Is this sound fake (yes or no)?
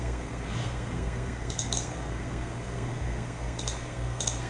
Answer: yes